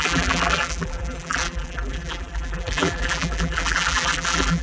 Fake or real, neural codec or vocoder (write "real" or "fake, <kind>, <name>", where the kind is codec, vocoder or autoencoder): fake, vocoder, BigVGAN v2